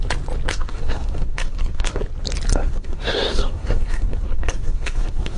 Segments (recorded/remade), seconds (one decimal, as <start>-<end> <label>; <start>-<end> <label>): 0.0-0.5 recorded; 0.5-2.0 remade; 2.0-2.5 recorded; 2.5-5.4 remade